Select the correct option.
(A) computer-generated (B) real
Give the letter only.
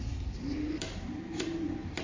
B